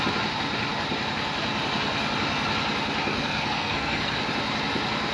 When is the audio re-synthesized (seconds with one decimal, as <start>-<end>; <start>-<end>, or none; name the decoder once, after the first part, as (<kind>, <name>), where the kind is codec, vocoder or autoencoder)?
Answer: 3.1-4.2 (codec, SNAC)